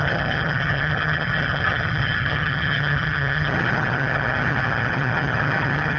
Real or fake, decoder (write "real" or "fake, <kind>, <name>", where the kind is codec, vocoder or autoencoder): fake, vocoder, HiFi-GAN